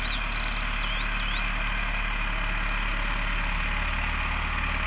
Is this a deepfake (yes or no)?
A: no